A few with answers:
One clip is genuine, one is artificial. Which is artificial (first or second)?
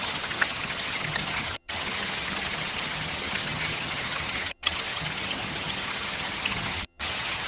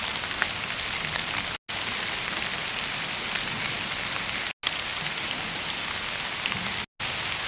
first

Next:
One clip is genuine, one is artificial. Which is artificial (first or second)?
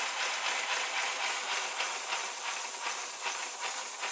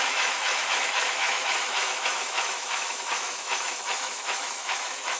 second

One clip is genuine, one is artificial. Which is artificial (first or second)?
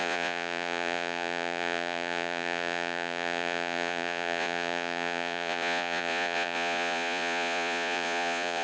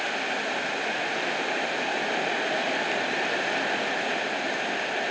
first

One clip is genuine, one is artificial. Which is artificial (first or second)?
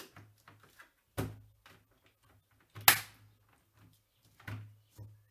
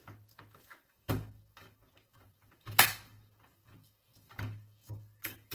second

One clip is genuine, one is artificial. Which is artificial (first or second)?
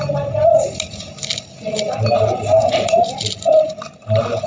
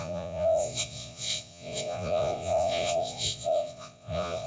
second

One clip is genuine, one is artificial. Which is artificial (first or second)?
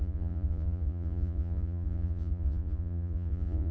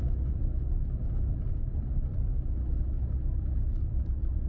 first